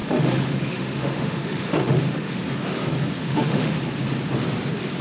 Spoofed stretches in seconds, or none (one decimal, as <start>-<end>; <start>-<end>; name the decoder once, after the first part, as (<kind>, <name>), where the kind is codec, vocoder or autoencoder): 0.0-2.4 (autoencoder, DAC-VAE); 3.2-3.8